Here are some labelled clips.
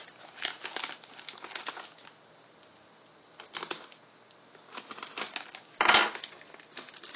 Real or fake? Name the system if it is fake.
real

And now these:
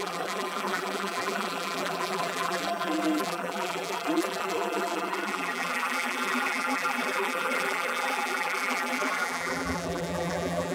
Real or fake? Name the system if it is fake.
fake, vocoder, BigVGAN v2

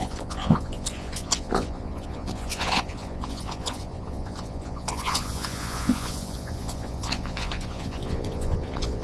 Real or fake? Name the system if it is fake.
fake, vocoder, Vocos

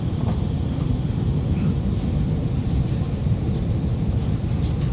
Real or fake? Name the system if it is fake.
real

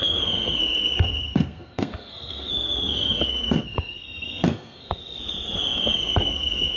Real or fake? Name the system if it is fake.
fake, codec, SNAC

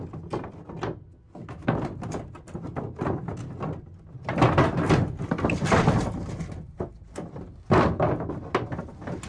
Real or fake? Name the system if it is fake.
real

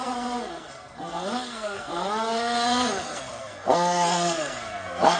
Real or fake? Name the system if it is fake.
fake, codec, SNAC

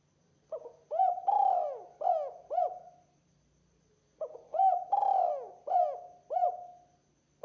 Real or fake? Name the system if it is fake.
real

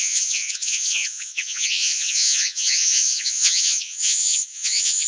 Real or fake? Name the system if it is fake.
fake, vocoder, Vocos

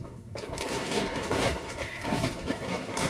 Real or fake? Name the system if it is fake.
fake, codec, SNAC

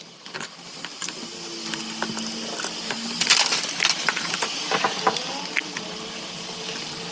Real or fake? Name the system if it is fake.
real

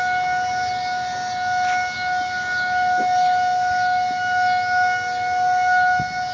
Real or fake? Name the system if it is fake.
real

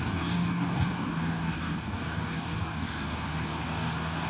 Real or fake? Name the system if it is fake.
fake, codec, DAC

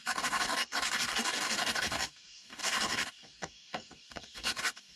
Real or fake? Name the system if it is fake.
fake, codec, DAC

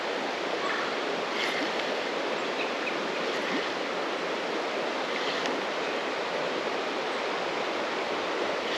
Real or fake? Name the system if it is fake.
real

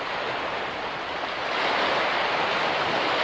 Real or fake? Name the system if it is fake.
real